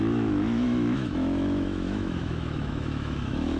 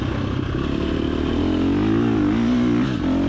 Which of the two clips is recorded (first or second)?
second